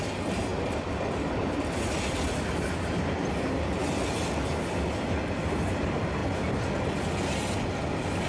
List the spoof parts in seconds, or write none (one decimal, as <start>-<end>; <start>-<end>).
none